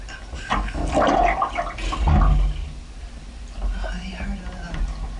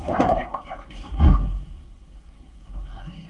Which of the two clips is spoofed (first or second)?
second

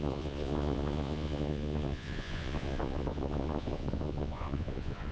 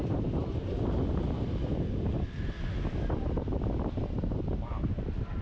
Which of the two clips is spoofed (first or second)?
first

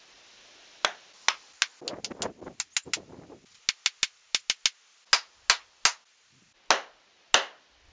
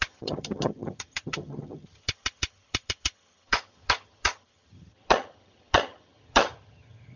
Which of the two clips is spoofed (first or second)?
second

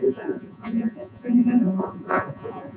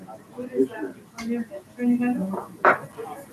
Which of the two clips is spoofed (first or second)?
first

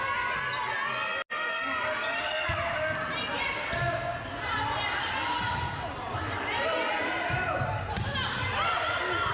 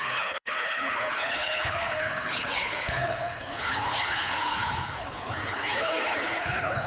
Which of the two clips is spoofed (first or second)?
second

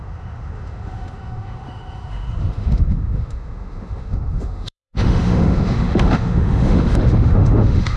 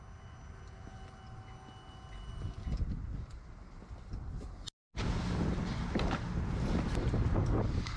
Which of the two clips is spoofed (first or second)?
first